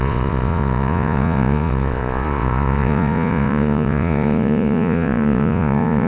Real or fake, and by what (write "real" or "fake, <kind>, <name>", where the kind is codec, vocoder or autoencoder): fake, vocoder, Vocos